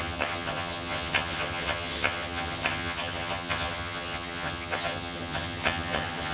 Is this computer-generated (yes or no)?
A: yes